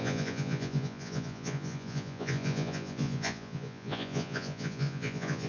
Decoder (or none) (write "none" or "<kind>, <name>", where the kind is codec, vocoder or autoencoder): vocoder, Vocos